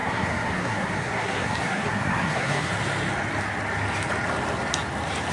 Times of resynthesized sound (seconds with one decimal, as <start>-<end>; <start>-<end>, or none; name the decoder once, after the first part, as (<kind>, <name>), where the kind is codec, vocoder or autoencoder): 0.0-2.7 (codec, SNAC)